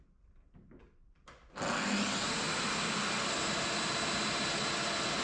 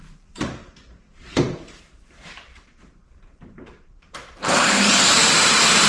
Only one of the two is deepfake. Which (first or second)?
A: second